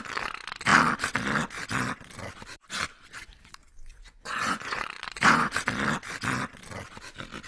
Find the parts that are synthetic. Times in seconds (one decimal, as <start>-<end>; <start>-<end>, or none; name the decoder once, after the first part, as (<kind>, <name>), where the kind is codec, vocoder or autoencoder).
3.9-5.5 (vocoder, Vocos)